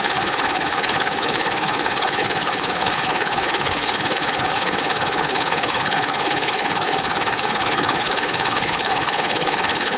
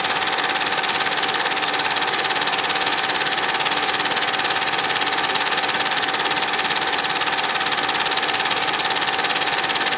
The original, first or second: second